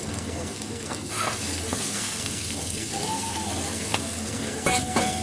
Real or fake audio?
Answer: fake